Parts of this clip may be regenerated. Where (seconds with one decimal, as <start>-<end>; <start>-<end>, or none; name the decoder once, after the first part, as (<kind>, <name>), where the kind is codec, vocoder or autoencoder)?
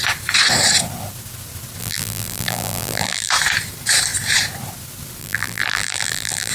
1.8-3.3 (vocoder, BigVGAN v2); 5.2-6.5